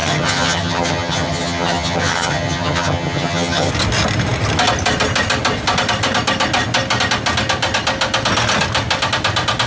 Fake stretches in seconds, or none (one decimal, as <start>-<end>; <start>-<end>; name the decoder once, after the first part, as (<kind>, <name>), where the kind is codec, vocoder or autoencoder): 0.0-3.7 (vocoder, HiFi-GAN)